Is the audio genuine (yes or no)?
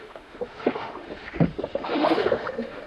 no